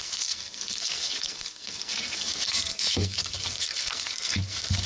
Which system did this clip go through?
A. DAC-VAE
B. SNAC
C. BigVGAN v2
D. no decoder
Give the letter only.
B